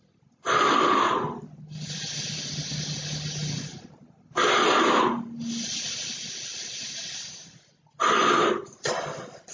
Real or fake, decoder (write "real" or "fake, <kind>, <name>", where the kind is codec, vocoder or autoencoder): real